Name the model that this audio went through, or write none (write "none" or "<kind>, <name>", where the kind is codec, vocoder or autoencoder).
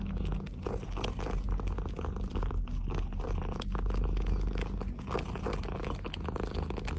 none